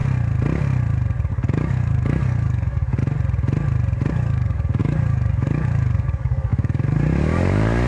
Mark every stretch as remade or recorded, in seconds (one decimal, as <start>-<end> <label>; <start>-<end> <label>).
0.0-1.3 recorded; 1.3-3.0 remade; 3.0-4.1 recorded; 4.1-7.9 remade